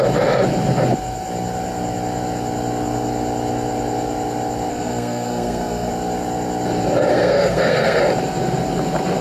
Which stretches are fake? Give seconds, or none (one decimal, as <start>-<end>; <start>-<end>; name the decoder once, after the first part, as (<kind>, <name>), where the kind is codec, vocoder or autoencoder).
4.7-5.9 (codec, SNAC); 7.1-8.0